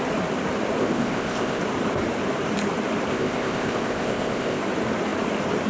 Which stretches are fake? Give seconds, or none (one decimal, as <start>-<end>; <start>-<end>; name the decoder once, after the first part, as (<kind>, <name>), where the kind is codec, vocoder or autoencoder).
0.8-1.6 (codec, ZipCodec); 3.1-4.6